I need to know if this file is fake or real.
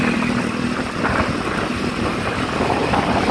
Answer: fake